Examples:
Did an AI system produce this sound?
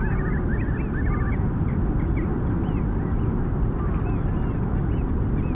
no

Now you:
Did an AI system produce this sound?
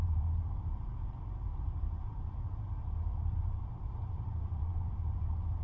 yes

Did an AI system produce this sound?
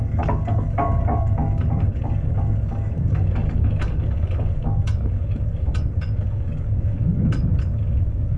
yes